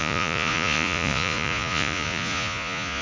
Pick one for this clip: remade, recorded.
remade